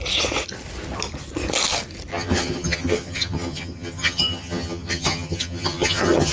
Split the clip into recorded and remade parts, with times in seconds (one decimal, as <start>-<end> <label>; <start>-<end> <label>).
0.0-2.1 recorded; 2.1-6.3 remade